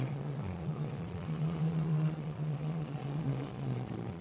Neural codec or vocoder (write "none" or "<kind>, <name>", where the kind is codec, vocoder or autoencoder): vocoder, Vocos